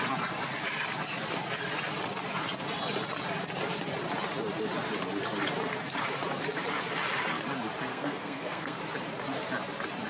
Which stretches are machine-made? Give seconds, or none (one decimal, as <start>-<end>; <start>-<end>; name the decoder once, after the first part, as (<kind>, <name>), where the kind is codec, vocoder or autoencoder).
7.9-8.8 (codec, SNAC)